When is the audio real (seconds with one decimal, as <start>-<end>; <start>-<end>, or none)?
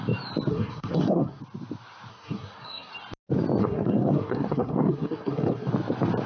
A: 0.0-0.5; 1.4-2.1; 2.9-3.6; 5.7-6.3